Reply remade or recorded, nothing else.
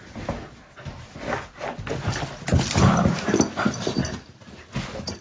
recorded